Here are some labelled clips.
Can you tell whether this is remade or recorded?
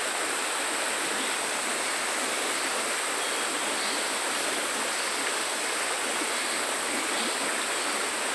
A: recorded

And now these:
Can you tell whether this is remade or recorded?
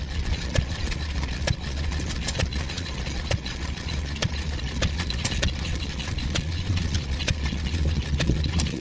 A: remade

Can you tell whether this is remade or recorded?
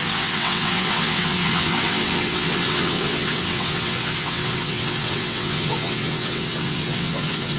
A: remade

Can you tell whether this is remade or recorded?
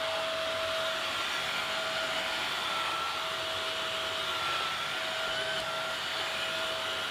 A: recorded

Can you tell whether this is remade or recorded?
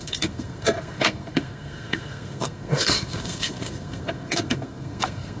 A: remade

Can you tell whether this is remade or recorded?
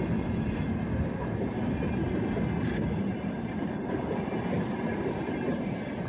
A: recorded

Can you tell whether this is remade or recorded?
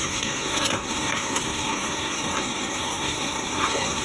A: remade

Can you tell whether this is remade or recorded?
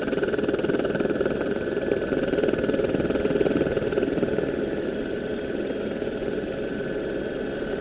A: recorded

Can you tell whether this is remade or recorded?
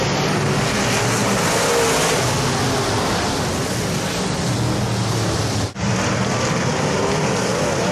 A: recorded